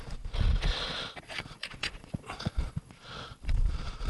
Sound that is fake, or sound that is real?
fake